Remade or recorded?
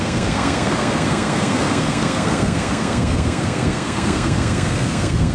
remade